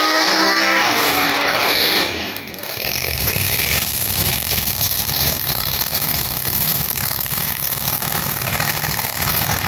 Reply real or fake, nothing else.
fake